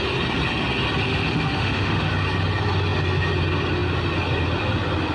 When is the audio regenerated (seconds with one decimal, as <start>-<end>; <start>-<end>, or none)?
1.1-2.1